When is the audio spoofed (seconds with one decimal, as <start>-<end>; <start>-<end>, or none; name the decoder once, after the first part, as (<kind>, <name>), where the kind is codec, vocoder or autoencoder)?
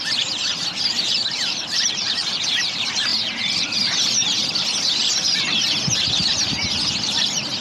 0.0-5.5 (vocoder, BigVGAN v2); 6.0-7.6